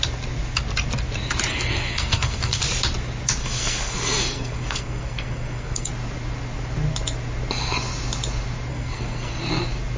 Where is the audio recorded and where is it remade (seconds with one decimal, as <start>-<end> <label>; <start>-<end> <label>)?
0.0-1.5 recorded; 1.5-2.6 remade; 2.6-3.4 recorded; 3.4-5.9 remade; 5.9-8.7 recorded; 8.7-9.3 remade; 9.3-10.0 recorded